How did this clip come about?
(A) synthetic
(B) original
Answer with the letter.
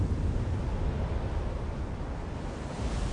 B